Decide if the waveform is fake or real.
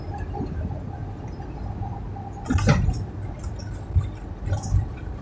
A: real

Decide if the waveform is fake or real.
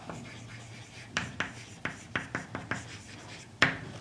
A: fake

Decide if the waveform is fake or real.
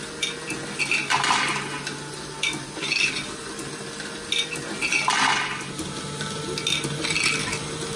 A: real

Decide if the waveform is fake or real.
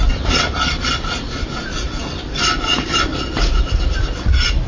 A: real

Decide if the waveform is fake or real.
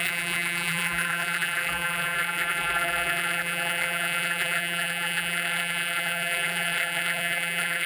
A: fake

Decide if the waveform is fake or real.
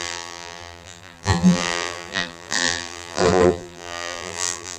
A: fake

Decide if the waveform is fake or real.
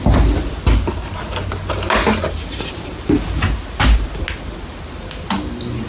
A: real